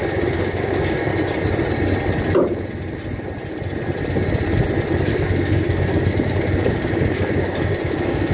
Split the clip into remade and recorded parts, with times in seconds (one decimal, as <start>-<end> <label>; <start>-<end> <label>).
0.0-1.1 remade; 1.1-5.0 recorded; 5.0-8.3 remade